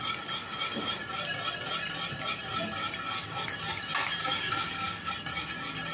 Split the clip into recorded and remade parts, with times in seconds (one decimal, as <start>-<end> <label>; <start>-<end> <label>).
0.0-4.2 recorded; 4.2-5.1 remade; 5.1-5.9 recorded